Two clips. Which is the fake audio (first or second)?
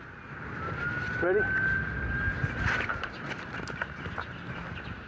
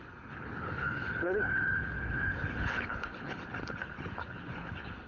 second